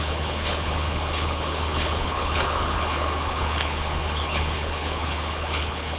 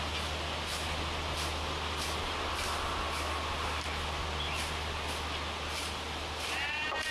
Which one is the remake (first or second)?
first